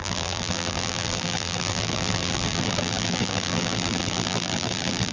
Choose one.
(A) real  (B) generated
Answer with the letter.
B